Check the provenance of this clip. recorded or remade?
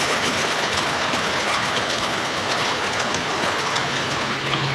remade